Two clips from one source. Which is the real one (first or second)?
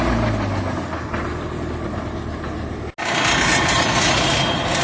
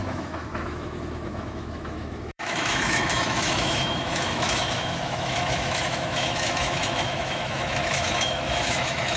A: first